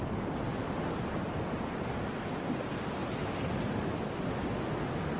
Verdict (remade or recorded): recorded